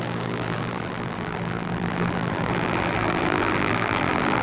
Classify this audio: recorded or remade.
remade